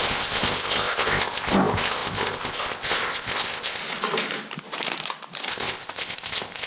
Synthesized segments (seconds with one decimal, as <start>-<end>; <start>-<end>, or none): 0.0-3.8; 5.5-6.7